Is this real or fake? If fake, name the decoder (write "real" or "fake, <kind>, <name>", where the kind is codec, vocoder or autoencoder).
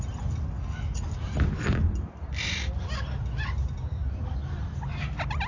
real